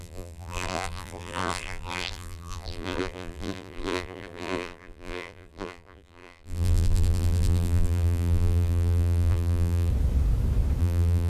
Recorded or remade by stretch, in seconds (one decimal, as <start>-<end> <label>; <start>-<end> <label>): 0.0-9.9 remade; 9.9-10.8 recorded; 10.8-11.3 remade